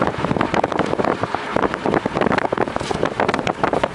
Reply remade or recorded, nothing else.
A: remade